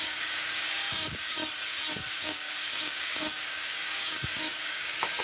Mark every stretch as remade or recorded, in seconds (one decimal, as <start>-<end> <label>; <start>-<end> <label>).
0.0-1.4 remade; 1.4-2.1 recorded; 2.1-5.2 remade